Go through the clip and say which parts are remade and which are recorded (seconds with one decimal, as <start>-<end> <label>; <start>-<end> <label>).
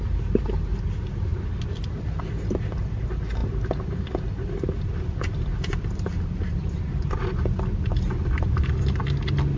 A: 0.0-9.6 recorded